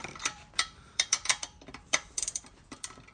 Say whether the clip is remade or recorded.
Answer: remade